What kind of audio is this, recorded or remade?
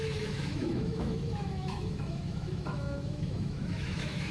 remade